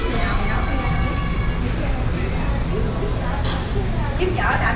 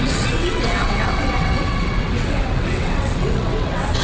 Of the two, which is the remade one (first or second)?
second